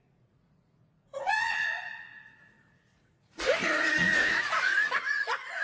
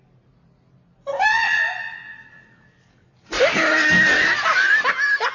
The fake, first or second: first